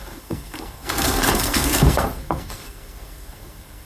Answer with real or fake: fake